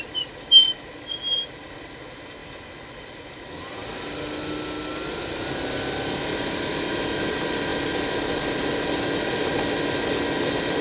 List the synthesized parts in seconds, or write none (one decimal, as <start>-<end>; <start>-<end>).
none